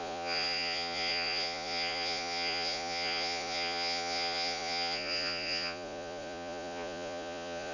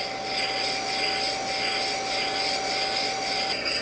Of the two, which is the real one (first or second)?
second